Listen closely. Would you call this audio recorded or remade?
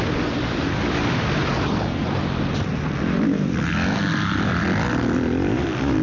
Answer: recorded